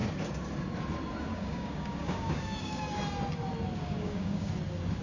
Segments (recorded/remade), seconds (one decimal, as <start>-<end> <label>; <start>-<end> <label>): 0.0-1.3 recorded; 1.3-3.0 remade; 3.0-3.8 recorded; 3.8-4.5 remade; 4.5-5.0 recorded